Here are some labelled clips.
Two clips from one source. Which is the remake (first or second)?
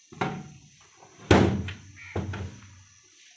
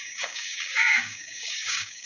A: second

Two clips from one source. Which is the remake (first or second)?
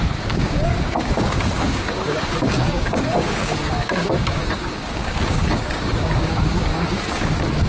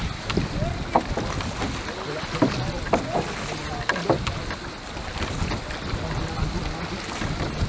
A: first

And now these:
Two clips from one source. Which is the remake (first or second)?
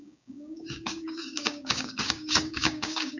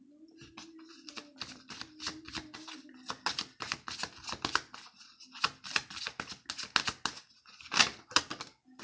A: first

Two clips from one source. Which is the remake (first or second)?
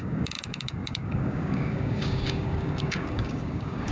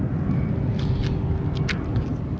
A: first